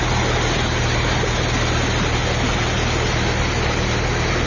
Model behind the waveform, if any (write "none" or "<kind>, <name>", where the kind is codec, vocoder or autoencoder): none